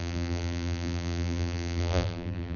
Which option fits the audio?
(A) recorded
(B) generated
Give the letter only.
B